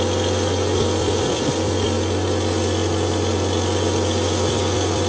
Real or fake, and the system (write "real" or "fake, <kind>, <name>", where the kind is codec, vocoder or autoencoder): real